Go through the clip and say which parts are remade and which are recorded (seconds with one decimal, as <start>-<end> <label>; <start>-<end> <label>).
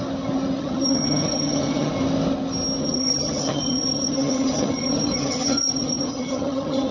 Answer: 0.0-0.6 recorded; 0.6-1.9 remade; 1.9-2.8 recorded; 2.8-6.9 remade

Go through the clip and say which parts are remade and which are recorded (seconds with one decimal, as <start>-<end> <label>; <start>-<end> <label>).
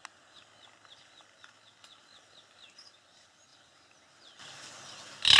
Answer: 0.0-5.4 recorded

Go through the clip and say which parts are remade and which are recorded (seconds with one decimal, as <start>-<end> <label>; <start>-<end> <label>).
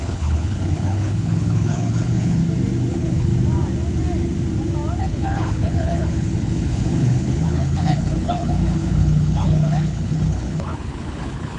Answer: 0.0-2.4 remade; 2.4-2.9 recorded; 2.9-3.3 remade; 3.3-5.0 recorded; 5.0-11.6 remade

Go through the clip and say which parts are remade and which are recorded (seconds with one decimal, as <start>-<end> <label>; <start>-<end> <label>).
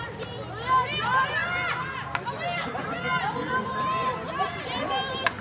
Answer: 0.0-5.4 recorded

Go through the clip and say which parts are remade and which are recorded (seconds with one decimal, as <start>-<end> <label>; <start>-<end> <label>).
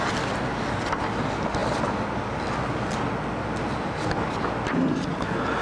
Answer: 0.0-5.6 recorded